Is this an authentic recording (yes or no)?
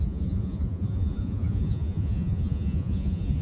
no